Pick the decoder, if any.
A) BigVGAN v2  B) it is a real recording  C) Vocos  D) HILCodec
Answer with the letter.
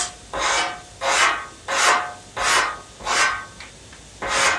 B